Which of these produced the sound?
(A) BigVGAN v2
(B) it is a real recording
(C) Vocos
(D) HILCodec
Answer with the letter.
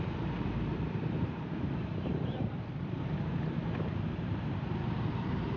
A